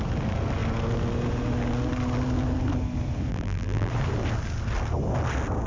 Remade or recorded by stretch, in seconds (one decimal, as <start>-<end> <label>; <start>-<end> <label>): 0.0-3.3 recorded; 3.3-3.9 remade; 3.9-5.7 recorded